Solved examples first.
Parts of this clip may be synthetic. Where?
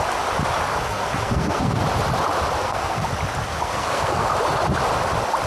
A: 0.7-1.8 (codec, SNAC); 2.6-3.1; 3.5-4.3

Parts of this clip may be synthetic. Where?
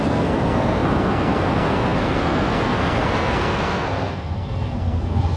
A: 0.0-5.4 (codec, SNAC)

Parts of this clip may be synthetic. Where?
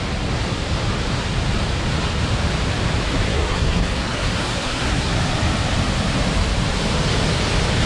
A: 3.3-5.1 (codec, SNAC)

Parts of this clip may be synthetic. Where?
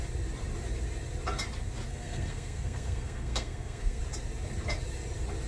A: 1.9-4.0 (codec, SNAC)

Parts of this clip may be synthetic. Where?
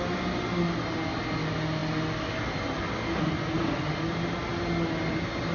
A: none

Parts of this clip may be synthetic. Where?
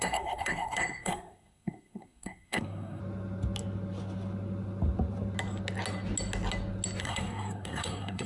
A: 0.0-3.0 (codec, SNAC); 7.0-8.3